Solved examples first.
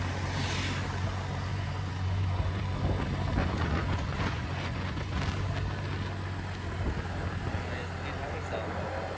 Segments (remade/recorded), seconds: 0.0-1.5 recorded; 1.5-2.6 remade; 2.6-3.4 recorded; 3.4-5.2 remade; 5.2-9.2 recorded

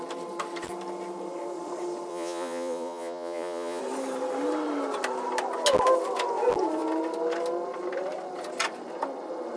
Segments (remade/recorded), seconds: 0.0-2.1 recorded; 2.1-3.8 remade; 3.8-9.6 recorded

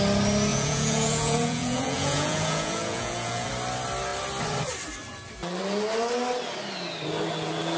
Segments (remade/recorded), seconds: 0.0-0.5 recorded; 0.5-3.5 remade; 3.5-7.8 recorded

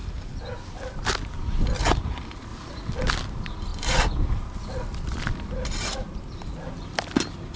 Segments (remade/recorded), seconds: 0.0-7.6 recorded

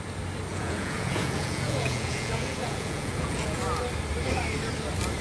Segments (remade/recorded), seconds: 0.0-0.5 recorded; 0.5-3.6 remade; 3.6-5.2 recorded

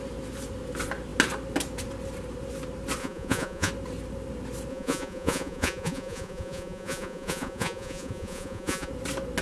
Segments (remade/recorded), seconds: 0.0-3.0 recorded; 3.0-3.7 remade; 3.7-4.7 recorded; 4.7-8.9 remade; 8.9-9.4 recorded